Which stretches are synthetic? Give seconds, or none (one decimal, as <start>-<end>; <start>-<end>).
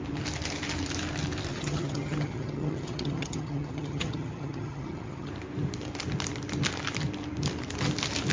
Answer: 1.5-5.3